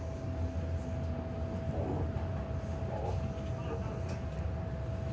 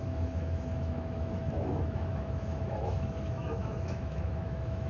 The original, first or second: first